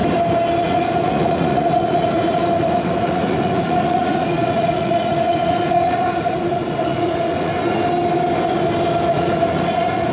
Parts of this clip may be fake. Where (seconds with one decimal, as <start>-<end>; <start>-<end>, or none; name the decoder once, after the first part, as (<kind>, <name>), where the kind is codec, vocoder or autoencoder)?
0.6-7.5 (vocoder, Vocos); 9.1-10.1